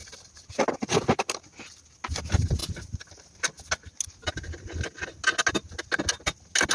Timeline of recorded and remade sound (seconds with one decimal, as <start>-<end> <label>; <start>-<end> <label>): 0.0-6.7 recorded